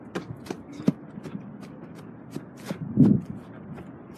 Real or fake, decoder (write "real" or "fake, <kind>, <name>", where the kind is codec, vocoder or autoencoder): real